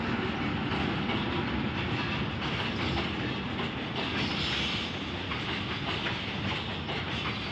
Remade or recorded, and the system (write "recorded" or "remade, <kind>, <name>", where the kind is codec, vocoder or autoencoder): recorded